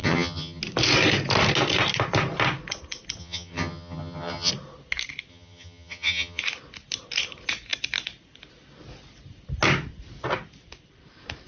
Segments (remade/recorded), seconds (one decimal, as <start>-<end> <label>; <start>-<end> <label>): 0.0-0.6 remade; 0.6-3.2 recorded; 3.2-4.5 remade; 4.5-5.3 recorded; 5.3-6.4 remade; 6.4-11.5 recorded